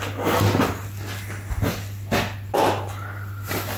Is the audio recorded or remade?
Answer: recorded